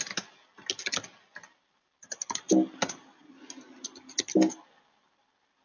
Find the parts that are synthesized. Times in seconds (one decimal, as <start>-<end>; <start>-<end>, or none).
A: none